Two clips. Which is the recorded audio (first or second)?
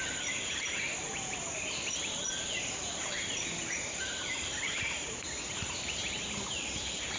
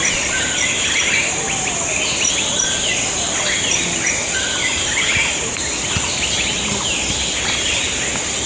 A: second